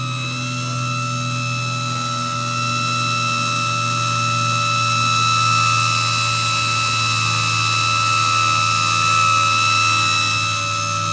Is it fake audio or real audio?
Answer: real